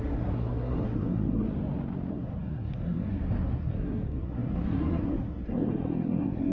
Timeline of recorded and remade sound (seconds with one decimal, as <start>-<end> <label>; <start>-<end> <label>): 0.0-1.5 remade; 1.5-2.1 recorded; 2.1-6.5 remade